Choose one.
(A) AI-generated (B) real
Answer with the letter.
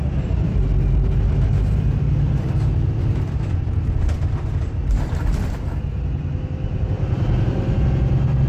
A